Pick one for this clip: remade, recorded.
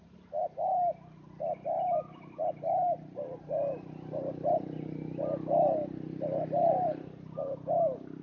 recorded